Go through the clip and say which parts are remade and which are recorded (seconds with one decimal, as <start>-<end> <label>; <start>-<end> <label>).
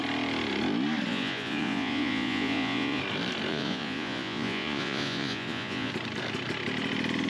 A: 0.0-1.1 recorded; 1.1-3.0 remade; 3.0-3.5 recorded; 3.5-5.9 remade; 5.9-7.3 recorded